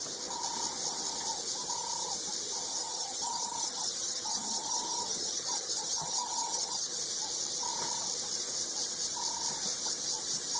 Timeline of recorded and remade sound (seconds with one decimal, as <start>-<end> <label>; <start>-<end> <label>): 0.0-2.8 recorded; 2.8-7.0 remade; 7.0-10.6 recorded